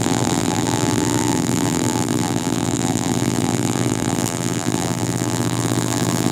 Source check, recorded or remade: remade